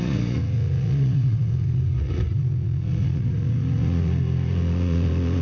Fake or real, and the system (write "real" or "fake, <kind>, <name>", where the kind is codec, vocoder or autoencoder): fake, vocoder, Vocos